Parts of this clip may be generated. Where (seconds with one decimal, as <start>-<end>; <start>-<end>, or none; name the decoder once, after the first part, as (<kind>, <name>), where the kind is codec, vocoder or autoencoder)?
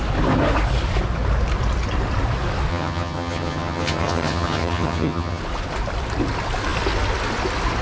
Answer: 2.7-5.4 (vocoder, HiFi-GAN)